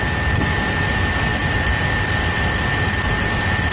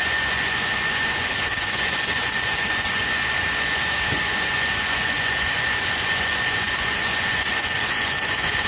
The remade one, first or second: second